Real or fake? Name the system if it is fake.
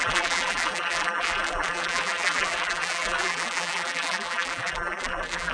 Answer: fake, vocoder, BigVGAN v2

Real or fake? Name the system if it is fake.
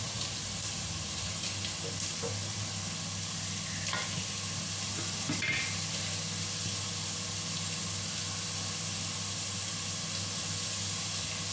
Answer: real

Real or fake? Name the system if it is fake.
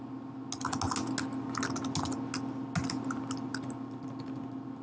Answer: real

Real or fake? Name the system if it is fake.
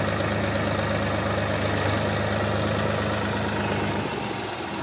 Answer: real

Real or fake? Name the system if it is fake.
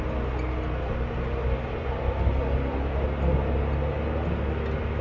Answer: real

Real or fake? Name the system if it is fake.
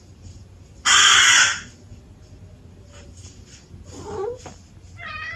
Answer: real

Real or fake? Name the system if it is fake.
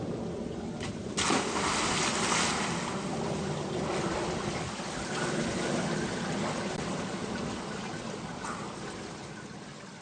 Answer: real